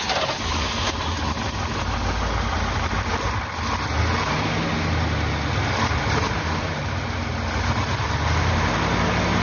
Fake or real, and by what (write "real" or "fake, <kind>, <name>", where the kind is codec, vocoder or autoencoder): real